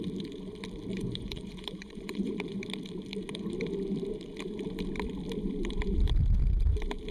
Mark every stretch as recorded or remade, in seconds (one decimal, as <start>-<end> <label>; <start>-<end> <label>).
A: 0.0-0.9 recorded; 0.9-2.4 remade; 2.4-7.1 recorded